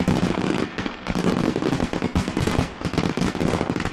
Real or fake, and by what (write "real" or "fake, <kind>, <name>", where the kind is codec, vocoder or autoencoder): fake, codec, SNAC